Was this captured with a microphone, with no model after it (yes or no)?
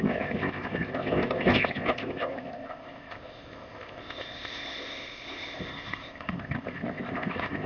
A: no